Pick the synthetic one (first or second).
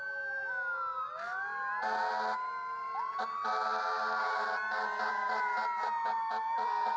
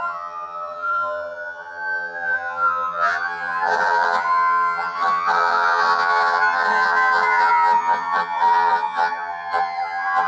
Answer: second